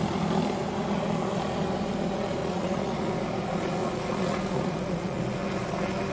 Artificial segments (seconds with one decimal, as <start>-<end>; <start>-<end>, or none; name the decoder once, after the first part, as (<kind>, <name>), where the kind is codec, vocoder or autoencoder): 2.4-3.1 (vocoder, Vocos); 3.8-5.2